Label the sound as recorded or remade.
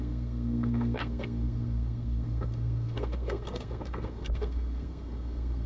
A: remade